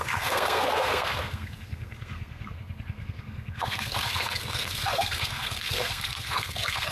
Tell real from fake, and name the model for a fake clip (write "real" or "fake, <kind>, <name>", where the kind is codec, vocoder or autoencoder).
fake, codec, SNAC